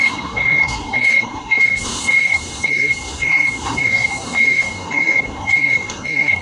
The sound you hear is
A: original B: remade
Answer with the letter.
B